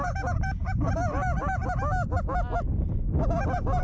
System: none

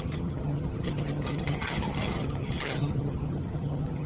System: vocoder, HiFi-GAN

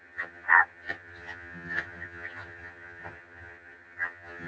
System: vocoder, HiFi-GAN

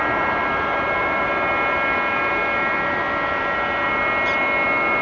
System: none